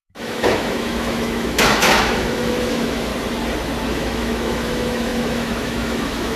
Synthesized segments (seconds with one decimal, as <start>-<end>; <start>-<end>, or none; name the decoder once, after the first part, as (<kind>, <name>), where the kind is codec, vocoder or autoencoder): 0.0-3.1 (autoencoder, DAC-VAE); 3.9-6.4